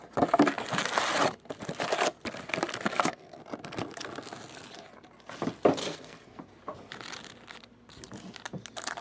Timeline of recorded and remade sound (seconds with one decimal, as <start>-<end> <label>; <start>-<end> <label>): 0.0-2.9 recorded; 2.9-3.4 remade; 3.4-5.8 recorded; 5.8-6.4 remade; 6.4-9.0 recorded